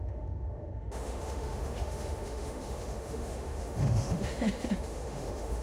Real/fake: fake